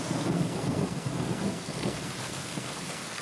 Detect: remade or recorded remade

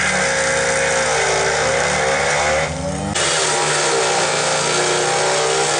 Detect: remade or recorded recorded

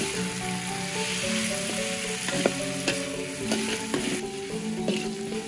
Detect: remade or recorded recorded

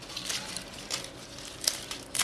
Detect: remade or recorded recorded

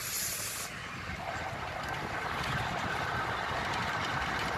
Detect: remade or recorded recorded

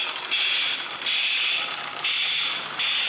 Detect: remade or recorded recorded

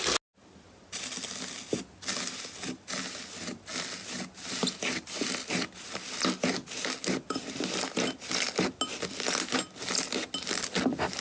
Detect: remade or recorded recorded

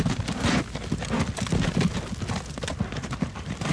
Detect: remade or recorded recorded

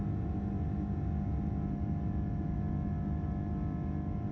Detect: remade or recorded recorded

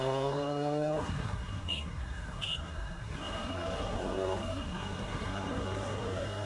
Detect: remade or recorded remade